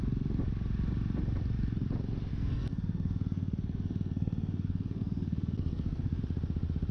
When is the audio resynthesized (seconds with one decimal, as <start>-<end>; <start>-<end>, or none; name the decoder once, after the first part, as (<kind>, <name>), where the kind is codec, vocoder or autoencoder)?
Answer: 2.3-6.2 (codec, SNAC)